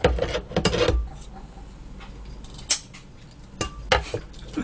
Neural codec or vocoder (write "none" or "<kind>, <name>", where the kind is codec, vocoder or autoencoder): none